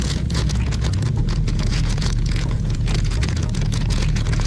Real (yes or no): no